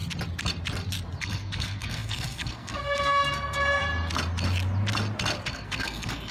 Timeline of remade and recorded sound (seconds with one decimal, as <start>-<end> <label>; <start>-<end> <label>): 0.0-1.2 recorded; 1.2-3.8 remade; 3.8-5.5 recorded; 5.5-6.3 remade